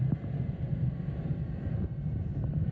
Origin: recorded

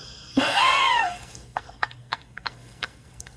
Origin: remade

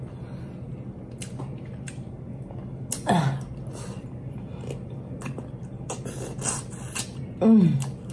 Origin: recorded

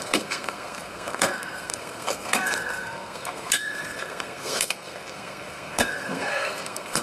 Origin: remade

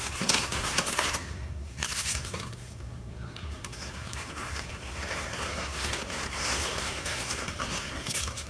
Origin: remade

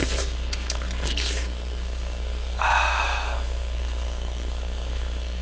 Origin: remade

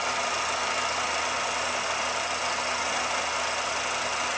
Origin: recorded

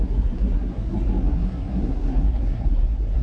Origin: remade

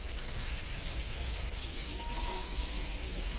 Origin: remade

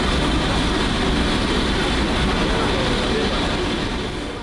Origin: recorded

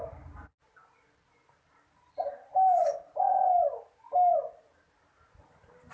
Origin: recorded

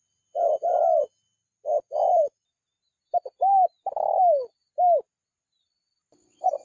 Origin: recorded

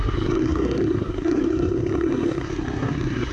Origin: remade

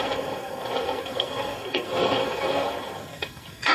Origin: remade